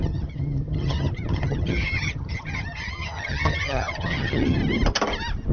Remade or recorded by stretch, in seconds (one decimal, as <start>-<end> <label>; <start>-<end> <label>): 0.0-4.6 remade; 4.6-5.5 recorded